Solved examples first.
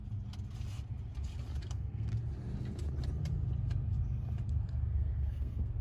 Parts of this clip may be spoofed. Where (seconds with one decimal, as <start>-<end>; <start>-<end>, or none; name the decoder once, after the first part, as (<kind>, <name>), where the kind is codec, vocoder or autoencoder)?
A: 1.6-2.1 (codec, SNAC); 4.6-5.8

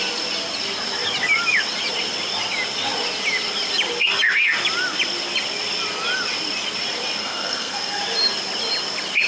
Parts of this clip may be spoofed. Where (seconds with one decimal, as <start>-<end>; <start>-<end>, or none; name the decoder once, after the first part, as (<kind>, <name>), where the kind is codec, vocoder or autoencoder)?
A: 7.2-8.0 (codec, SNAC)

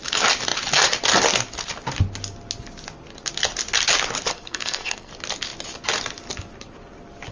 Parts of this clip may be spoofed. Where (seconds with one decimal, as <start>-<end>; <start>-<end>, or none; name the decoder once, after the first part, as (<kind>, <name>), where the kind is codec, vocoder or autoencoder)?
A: 4.3-5.1 (codec, SNAC)

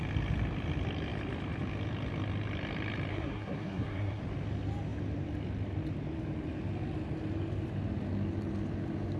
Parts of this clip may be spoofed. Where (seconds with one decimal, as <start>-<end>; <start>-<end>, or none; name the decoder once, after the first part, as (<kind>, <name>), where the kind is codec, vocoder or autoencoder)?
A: 3.1-4.2 (codec, SNAC)

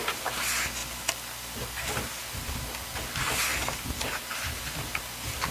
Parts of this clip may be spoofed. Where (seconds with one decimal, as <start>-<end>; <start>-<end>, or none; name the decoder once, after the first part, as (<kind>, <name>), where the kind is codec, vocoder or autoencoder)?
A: none

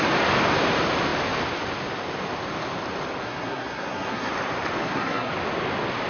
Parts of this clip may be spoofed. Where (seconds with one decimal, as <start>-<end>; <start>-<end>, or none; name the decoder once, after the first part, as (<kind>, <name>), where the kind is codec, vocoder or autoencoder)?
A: 3.2-4.3 (codec, SNAC); 4.8-5.3

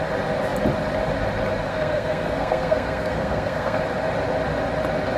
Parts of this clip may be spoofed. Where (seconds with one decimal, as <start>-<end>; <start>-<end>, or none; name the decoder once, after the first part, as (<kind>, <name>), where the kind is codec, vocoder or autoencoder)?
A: 1.7-3.8 (codec, SNAC)

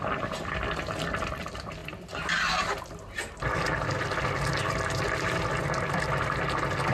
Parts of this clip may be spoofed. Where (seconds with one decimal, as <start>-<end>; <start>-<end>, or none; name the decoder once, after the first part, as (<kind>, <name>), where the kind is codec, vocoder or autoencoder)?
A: none